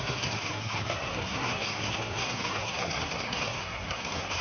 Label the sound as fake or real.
fake